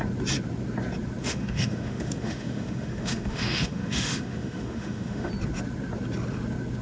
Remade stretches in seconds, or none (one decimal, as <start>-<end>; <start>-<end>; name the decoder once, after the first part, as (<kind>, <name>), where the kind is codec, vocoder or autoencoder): 1.2-5.3 (autoencoder, DAC-VAE)